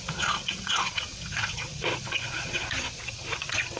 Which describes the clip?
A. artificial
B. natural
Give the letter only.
A